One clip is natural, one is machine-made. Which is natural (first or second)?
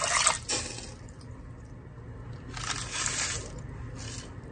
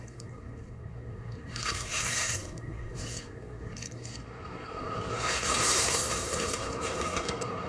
first